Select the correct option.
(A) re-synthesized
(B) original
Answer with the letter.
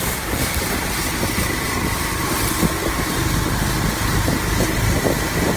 B